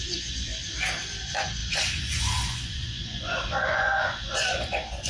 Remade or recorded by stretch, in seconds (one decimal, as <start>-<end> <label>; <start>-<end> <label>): 0.0-0.5 remade; 0.5-1.2 recorded; 1.2-5.1 remade